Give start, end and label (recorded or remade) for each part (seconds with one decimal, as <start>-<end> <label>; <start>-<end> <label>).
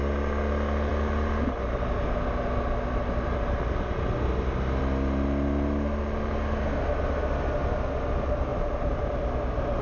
0.0-8.5 recorded; 8.5-9.2 remade; 9.2-9.8 recorded